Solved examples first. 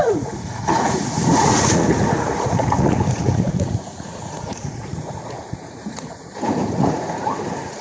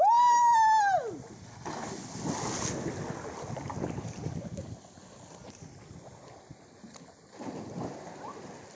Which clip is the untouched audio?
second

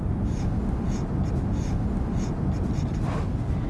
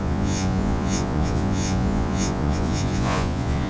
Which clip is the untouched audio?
first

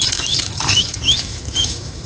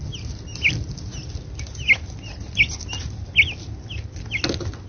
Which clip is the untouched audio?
second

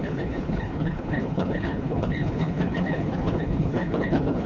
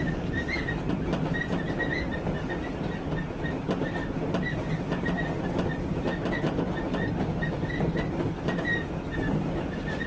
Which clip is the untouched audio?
second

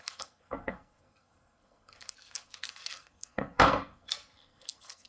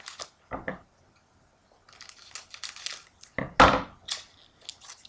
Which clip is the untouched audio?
second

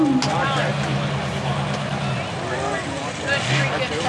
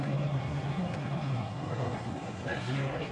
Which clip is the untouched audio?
first